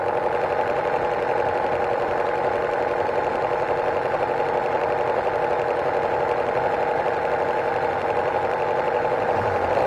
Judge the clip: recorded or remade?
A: recorded